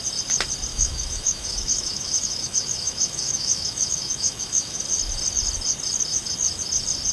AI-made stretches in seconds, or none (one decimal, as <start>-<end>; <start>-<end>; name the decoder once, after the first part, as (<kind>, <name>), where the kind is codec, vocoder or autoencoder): 0.7-4.8 (autoencoder, DAC-VAE)